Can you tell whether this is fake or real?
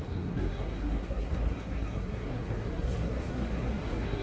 fake